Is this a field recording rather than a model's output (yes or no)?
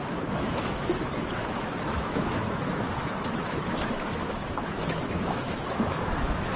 no